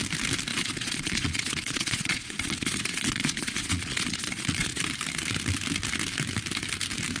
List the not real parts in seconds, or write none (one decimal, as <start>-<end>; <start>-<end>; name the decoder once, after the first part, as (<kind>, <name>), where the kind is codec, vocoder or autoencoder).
0.5-4.8 (vocoder, Vocos)